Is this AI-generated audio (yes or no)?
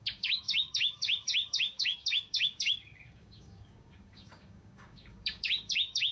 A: yes